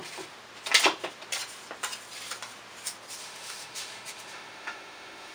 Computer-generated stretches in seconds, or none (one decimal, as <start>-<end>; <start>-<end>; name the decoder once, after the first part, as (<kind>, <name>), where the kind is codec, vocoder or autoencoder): 3.2-5.3 (autoencoder, DAC-VAE)